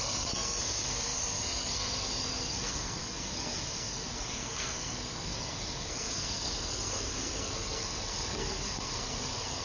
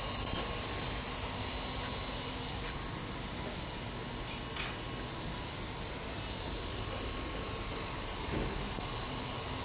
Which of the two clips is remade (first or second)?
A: first